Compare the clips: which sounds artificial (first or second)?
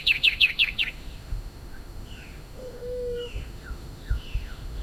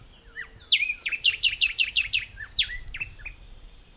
first